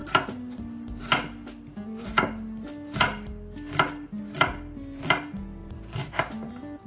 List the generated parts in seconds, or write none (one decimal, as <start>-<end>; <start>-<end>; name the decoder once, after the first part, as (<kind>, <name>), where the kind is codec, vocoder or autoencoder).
5.6-6.9 (vocoder, BigVGAN v2)